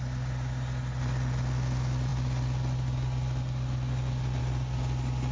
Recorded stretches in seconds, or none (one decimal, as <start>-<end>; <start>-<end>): 0.0-5.3